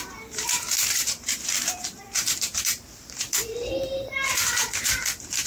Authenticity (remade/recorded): remade